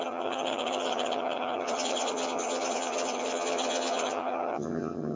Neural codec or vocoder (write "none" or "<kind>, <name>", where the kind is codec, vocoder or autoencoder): vocoder, HiFi-GAN